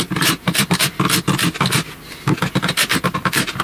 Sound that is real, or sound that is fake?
real